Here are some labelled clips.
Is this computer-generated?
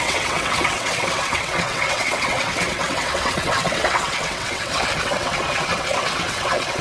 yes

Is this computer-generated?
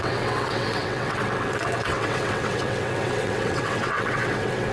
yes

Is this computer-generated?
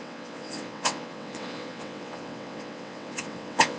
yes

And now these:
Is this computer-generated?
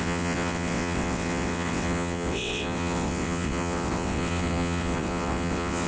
yes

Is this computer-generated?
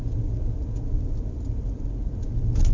no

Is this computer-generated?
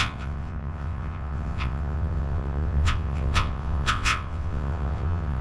yes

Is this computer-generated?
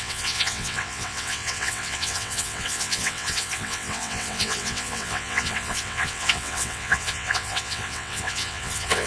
yes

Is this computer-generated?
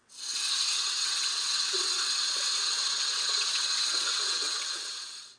yes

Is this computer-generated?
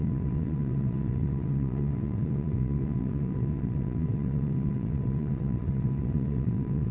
yes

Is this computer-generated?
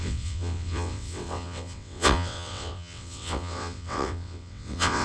yes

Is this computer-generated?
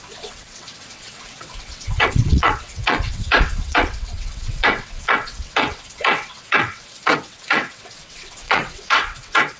yes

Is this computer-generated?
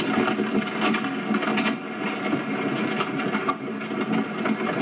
no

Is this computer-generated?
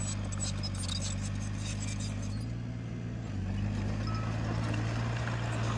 no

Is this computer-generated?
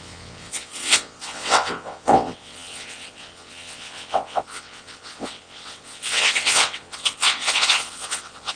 yes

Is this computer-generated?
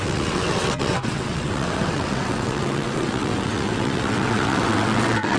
yes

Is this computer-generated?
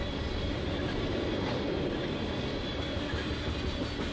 no